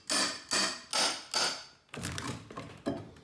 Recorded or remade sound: recorded